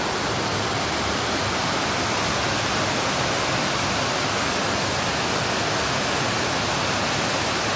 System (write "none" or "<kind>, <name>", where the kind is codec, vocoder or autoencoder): none